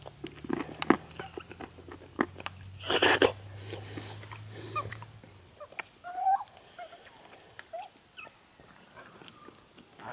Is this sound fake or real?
real